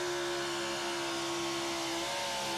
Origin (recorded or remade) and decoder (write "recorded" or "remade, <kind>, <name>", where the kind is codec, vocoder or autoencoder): recorded